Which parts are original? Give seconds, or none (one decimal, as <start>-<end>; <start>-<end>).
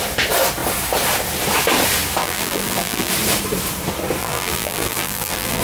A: 0.0-2.2; 3.1-4.2